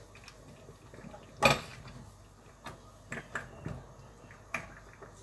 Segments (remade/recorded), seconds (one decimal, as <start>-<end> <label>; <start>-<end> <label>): 0.0-5.2 recorded